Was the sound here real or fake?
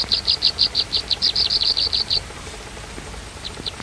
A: real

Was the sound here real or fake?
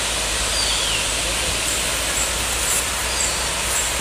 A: real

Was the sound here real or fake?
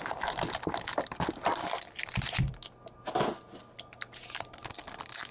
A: real